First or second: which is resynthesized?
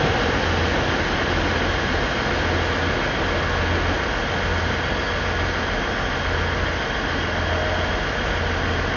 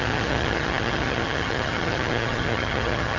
second